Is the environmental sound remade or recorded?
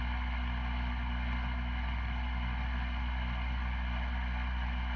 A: recorded